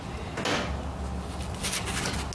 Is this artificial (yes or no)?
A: no